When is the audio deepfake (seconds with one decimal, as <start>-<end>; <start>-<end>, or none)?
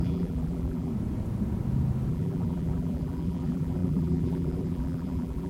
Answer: 0.0-0.9; 2.1-5.5